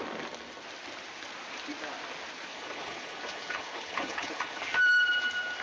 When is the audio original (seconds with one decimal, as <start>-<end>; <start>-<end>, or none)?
0.0-2.5; 4.6-5.6